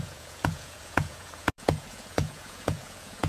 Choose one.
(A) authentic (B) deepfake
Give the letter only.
B